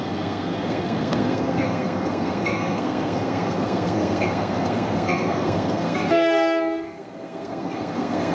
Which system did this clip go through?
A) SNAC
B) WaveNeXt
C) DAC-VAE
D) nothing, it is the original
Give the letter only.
A